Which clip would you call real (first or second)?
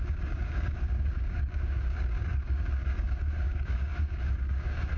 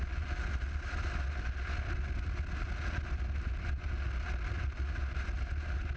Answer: second